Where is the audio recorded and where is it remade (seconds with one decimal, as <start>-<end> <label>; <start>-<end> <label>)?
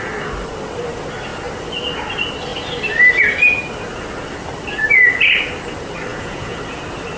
0.0-6.1 recorded; 6.1-6.6 remade; 6.6-7.2 recorded